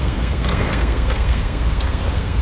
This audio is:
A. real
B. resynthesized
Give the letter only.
B